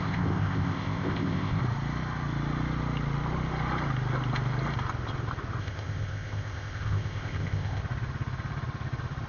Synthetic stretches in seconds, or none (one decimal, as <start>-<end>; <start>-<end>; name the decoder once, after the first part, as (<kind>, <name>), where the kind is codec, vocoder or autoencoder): 0.0-1.6 (codec, ZipCodec); 5.6-7.8